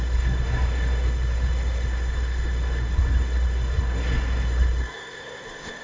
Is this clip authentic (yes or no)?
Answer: no